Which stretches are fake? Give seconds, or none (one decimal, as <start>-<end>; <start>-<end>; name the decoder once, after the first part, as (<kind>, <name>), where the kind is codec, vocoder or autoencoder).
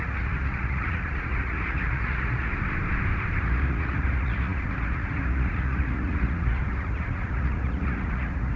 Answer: 0.0-2.5 (vocoder, Vocos); 3.4-8.6